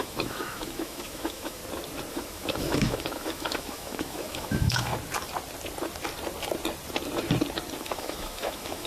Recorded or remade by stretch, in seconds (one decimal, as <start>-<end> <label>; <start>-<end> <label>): 0.0-1.6 remade; 1.6-2.1 recorded; 2.1-4.9 remade; 4.9-7.8 recorded; 7.8-8.9 remade